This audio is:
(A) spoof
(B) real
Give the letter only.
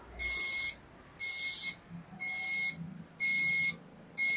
B